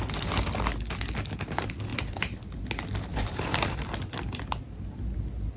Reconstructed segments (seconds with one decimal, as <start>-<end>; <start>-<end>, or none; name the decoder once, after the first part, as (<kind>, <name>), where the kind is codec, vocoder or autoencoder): 3.1-3.8 (vocoder, BigVGAN v2)